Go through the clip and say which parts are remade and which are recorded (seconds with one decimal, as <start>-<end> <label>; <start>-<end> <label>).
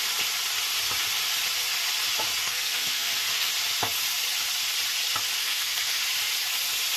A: 0.0-2.4 recorded; 2.4-3.5 remade; 3.5-5.4 recorded; 5.4-6.0 remade; 6.0-7.0 recorded